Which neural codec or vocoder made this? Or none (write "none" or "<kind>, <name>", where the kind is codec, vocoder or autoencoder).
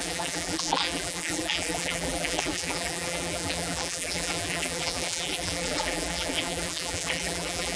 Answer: vocoder, BigVGAN v2